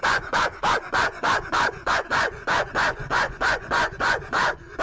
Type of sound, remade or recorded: remade